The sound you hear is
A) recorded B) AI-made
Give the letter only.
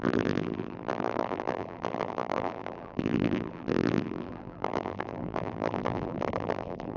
B